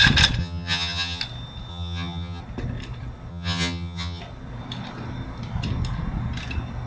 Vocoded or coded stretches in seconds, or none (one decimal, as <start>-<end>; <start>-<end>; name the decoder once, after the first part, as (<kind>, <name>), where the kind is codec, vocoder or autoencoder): 0.4-1.2 (vocoder, HiFi-GAN); 1.7-2.4; 3.3-4.2

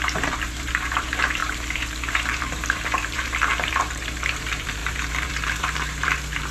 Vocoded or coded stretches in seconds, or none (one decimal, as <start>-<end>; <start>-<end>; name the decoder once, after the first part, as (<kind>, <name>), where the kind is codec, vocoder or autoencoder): 0.0-6.5 (vocoder, BigVGAN v2)